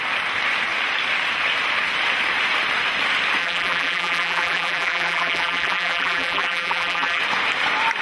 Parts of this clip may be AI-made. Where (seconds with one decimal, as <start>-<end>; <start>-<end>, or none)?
3.4-7.2